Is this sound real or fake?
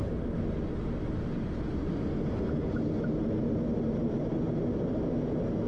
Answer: real